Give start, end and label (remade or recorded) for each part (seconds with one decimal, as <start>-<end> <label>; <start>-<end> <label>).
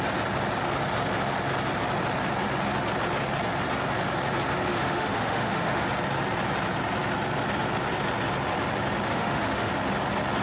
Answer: 0.0-4.7 recorded; 4.7-5.8 remade; 5.8-9.1 recorded; 9.1-9.7 remade; 9.7-10.4 recorded